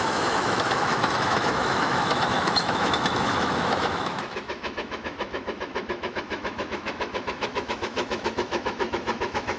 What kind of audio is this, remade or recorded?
remade